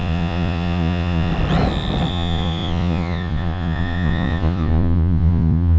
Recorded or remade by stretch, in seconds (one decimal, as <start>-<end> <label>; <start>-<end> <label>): 0.0-1.3 remade; 1.3-2.1 recorded; 2.1-5.8 remade